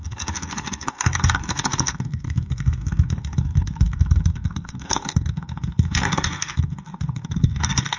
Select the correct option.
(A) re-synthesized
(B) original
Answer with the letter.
A